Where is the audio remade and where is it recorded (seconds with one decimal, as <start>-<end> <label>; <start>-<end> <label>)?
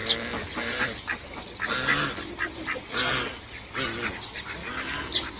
0.0-5.4 recorded